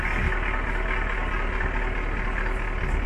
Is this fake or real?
real